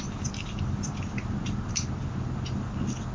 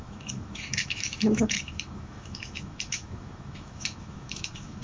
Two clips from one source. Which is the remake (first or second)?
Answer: second